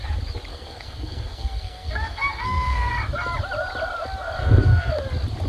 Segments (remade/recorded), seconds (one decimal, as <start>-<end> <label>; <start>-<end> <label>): 0.0-0.5 recorded; 0.5-2.9 remade; 2.9-4.4 recorded; 4.4-4.9 remade; 4.9-5.5 recorded